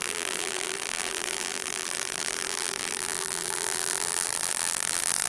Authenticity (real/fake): fake